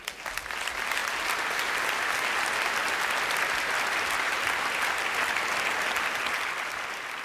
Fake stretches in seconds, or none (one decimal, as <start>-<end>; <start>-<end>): none

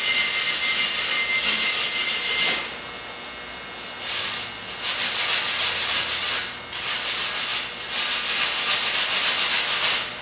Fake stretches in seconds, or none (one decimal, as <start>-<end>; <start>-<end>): none

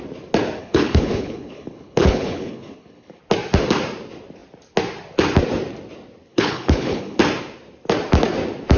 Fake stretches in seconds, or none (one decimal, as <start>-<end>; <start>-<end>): 0.6-3.2; 6.3-7.2

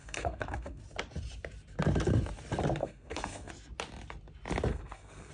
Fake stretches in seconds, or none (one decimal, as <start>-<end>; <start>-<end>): 0.0-0.8; 2.8-3.5; 4.7-5.3